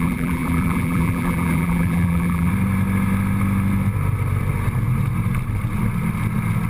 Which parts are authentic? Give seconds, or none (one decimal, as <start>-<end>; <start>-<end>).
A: 2.5-6.7